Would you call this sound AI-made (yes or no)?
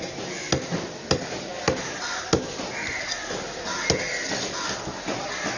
no